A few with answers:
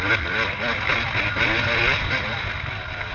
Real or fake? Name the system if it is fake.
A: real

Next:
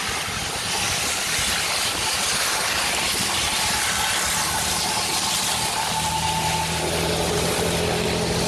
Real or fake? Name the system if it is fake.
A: real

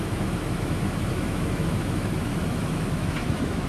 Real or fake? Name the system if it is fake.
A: fake, autoencoder, DAC-VAE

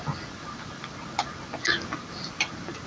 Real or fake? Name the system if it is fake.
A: real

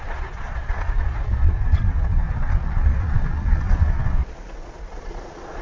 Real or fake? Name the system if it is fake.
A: fake, vocoder, Vocos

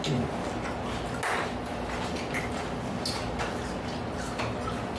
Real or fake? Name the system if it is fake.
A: real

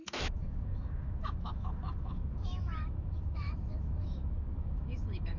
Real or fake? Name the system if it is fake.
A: fake, autoencoder, DAC-VAE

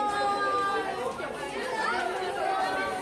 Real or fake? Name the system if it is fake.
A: real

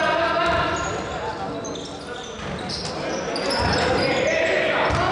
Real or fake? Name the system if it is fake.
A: real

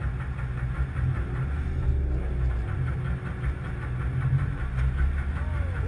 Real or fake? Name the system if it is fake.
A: real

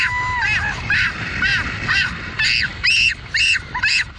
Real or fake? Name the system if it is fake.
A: real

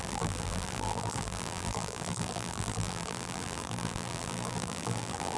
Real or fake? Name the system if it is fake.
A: fake, vocoder, BigVGAN v2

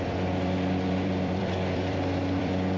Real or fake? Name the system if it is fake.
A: fake, vocoder, BigVGAN v2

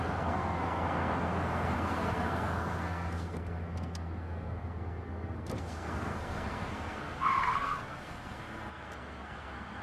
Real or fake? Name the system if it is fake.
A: fake, codec, SNAC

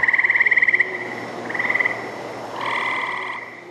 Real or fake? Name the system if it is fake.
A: real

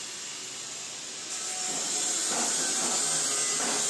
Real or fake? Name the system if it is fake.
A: real